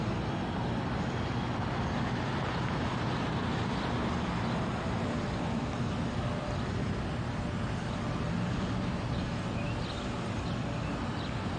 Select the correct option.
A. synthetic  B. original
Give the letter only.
B